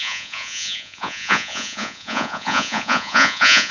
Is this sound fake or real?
fake